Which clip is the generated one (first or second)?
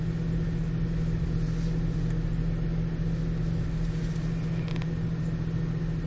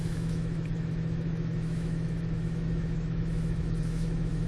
second